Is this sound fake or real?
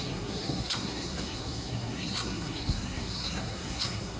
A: fake